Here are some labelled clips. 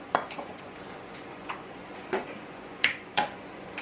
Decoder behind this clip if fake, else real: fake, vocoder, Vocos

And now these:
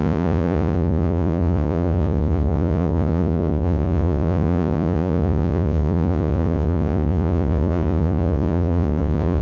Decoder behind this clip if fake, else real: fake, vocoder, Vocos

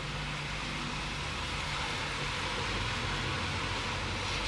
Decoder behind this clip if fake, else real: real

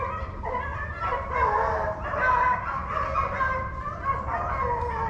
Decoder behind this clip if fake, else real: real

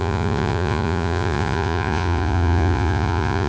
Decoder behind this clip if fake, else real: fake, vocoder, Vocos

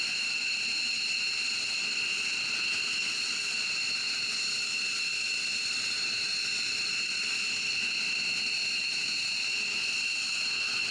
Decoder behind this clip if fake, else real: real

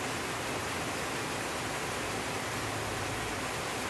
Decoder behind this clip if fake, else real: real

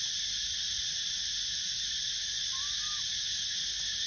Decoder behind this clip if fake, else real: real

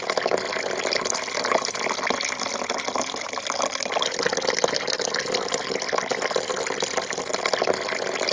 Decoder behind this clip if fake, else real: real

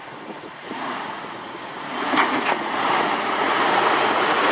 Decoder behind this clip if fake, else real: fake, vocoder, Vocos